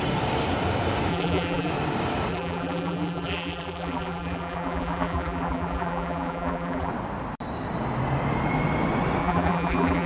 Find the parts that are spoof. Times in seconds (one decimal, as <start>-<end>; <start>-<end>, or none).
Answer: 1.1-1.7; 2.3-6.9; 9.2-10.1